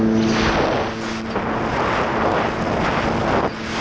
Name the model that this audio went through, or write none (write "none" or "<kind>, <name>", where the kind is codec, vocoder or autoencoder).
none